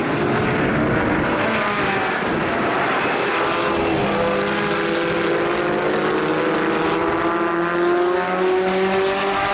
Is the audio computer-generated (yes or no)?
no